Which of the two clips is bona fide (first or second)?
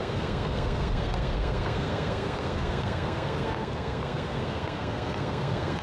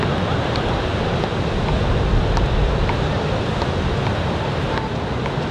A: second